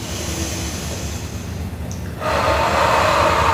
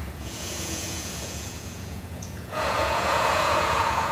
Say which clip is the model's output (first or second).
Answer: second